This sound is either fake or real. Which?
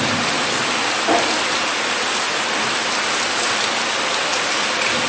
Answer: real